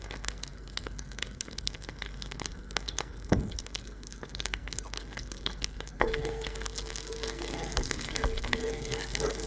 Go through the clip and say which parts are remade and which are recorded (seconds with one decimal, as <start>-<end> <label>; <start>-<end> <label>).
0.0-9.5 remade